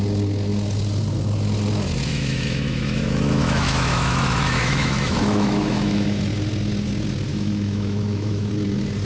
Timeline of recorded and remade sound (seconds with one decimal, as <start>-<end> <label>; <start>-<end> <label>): 0.0-2.1 recorded; 2.1-6.2 remade; 6.2-7.3 recorded; 7.3-8.5 remade; 8.5-9.0 recorded